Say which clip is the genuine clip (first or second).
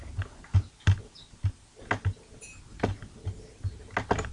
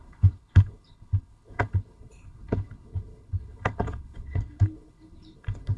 first